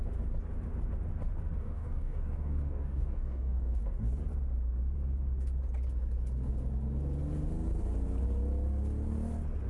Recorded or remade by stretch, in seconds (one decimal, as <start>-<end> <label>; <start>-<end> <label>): 0.0-1.6 recorded; 1.6-3.8 remade; 3.8-9.7 recorded